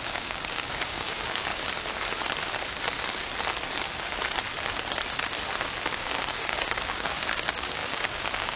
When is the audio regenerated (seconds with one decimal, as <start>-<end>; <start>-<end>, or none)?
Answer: 0.0-1.5; 6.0-8.6